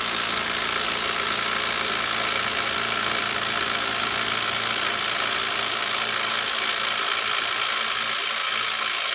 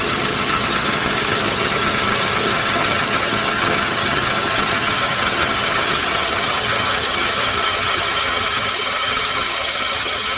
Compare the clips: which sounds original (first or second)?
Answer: first